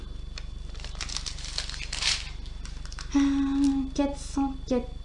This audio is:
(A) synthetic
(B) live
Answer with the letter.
B